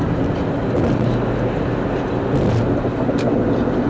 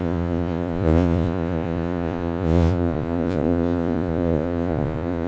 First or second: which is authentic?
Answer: first